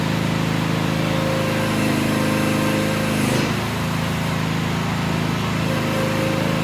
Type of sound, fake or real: real